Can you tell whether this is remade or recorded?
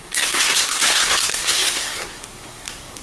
remade